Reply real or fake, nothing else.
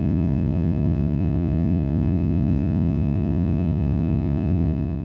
fake